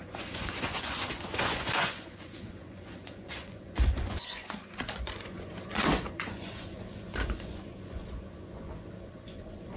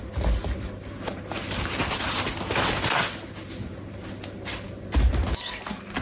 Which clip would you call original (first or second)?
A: second